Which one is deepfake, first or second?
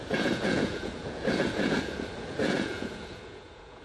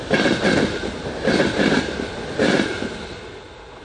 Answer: first